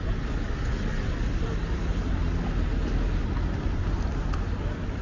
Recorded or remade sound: recorded